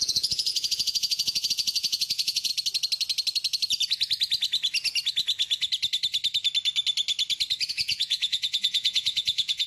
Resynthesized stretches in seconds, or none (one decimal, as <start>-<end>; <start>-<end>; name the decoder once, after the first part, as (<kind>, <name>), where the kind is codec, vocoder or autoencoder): 0.0-2.5 (vocoder, Vocos); 7.7-9.7